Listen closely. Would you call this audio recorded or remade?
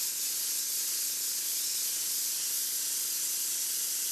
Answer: recorded